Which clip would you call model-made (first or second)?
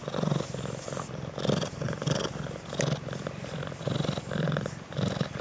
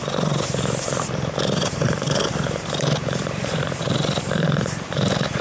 second